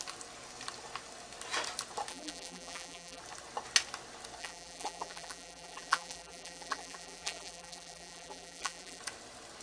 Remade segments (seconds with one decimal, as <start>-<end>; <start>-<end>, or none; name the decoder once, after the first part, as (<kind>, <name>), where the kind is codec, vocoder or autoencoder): 2.1-3.2 (vocoder, BigVGAN v2); 4.4-9.0